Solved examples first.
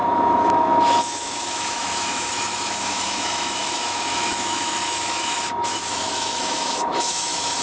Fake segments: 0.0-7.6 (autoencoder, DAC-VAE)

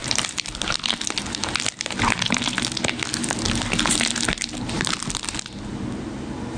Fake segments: none